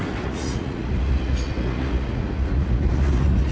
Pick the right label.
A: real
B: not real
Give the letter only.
B